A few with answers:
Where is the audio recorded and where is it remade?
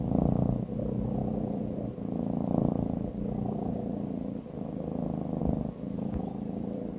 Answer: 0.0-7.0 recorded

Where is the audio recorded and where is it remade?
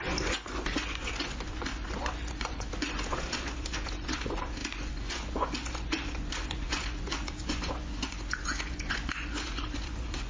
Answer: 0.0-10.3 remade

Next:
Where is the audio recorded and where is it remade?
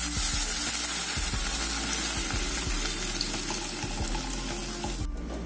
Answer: 0.0-5.5 recorded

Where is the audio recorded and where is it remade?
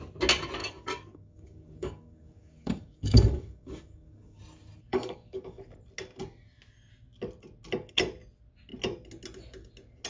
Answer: 0.0-0.6 recorded; 0.6-4.4 remade; 4.4-4.9 recorded; 4.9-5.6 remade; 5.6-10.1 recorded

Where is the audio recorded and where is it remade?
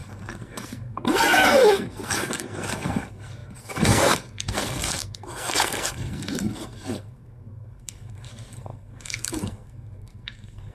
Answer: 0.0-10.7 remade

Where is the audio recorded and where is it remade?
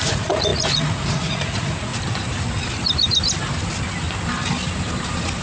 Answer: 0.0-1.9 remade; 1.9-5.4 recorded